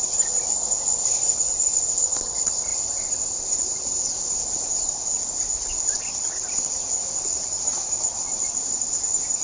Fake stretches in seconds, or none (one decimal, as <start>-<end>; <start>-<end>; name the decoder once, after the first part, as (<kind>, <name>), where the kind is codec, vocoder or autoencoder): none